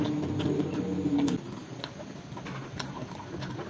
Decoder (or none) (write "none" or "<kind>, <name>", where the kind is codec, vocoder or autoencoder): none